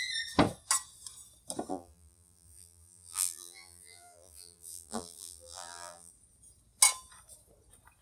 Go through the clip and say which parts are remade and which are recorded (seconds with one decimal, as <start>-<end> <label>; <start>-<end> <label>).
0.0-1.7 recorded; 1.7-6.1 remade; 6.1-8.0 recorded